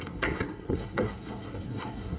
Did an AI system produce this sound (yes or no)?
yes